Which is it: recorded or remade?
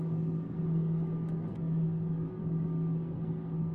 remade